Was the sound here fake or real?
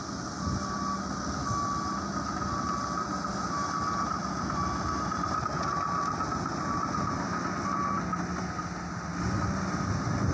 real